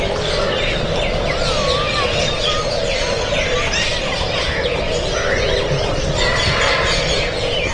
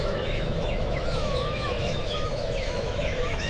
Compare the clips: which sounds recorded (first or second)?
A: first